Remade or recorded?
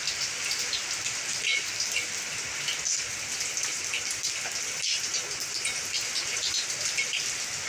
recorded